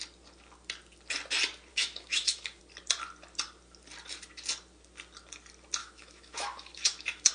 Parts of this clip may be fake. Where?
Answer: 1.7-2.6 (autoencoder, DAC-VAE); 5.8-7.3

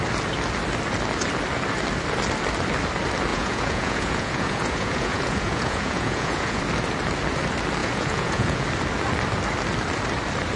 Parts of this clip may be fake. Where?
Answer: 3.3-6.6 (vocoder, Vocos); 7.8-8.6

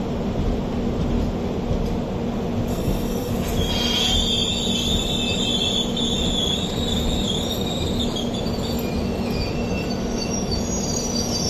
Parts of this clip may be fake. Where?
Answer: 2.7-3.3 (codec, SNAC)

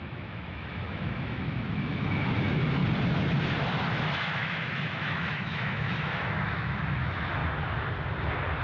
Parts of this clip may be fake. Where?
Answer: 0.0-2.8 (autoencoder, DAC-VAE); 4.1-7.4